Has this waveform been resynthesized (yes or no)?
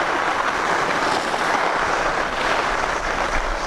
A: no